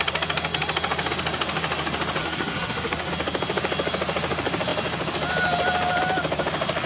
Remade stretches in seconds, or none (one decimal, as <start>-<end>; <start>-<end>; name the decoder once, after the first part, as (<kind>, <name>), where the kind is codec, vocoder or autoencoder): 2.2-3.1 (codec, SNAC)